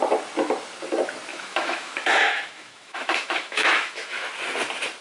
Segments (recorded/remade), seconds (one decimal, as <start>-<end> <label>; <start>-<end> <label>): 0.0-1.3 recorded; 1.3-4.3 remade; 4.3-5.0 recorded